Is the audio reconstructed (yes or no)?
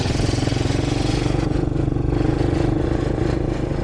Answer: yes